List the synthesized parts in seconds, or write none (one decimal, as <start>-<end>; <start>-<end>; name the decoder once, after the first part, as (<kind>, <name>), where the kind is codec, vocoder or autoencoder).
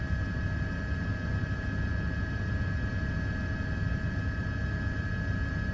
none